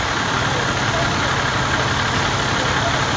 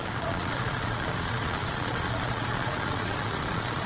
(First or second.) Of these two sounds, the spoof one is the second